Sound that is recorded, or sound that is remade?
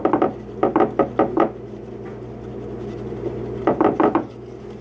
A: recorded